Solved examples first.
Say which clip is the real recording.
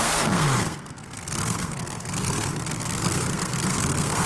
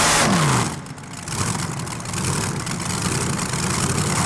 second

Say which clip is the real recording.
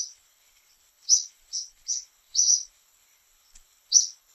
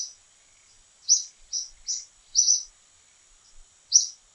second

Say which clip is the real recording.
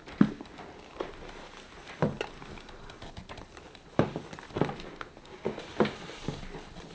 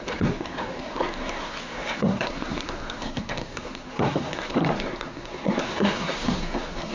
first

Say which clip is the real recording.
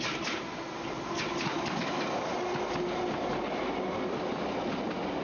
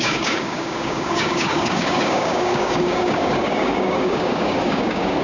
first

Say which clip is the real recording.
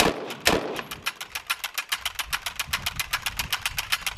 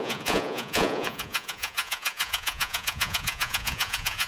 first